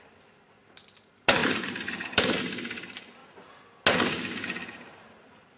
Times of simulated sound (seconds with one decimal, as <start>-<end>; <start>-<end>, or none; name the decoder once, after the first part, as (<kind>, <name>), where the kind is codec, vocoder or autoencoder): 1.4-2.3 (vocoder, BigVGAN v2)